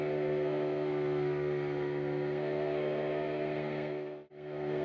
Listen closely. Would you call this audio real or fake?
fake